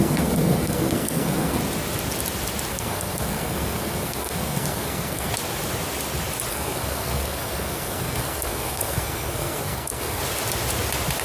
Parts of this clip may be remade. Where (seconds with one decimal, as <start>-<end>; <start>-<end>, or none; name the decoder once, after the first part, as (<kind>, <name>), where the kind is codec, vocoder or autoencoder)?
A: 0.0-1.6 (codec, SNAC); 2.7-5.3; 6.5-10.2